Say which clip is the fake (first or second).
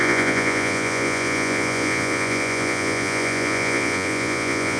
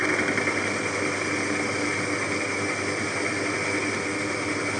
first